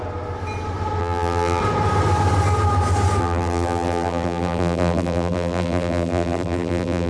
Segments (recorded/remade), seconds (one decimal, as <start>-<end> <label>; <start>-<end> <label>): 0.0-1.0 recorded; 1.0-1.6 remade; 1.6-3.2 recorded; 3.2-7.1 remade